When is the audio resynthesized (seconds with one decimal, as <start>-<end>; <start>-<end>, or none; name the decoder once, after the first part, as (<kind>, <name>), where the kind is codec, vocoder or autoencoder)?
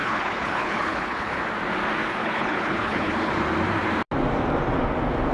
0.0-1.4 (codec, HILCodec); 2.2-3.3